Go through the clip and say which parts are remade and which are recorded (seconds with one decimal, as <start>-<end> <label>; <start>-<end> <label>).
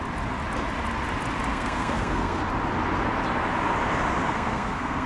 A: 0.0-1.5 recorded; 1.5-2.4 remade; 2.4-4.2 recorded; 4.2-5.1 remade